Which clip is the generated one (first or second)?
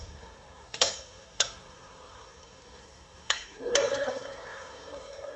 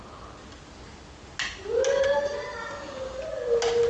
first